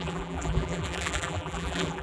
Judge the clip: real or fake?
fake